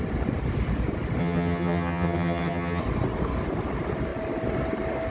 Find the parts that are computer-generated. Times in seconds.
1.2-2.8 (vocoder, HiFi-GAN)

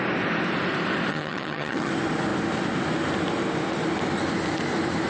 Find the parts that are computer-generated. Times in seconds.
1.1-1.9 (vocoder, HiFi-GAN)